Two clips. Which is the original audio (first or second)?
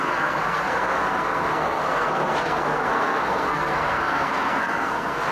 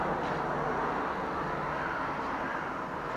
second